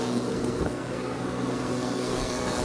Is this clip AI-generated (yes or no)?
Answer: yes